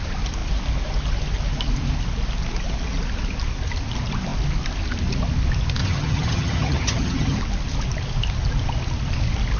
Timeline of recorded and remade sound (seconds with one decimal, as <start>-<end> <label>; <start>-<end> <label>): 0.0-5.8 recorded; 5.8-7.4 remade; 7.4-9.6 recorded